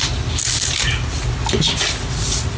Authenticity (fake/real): real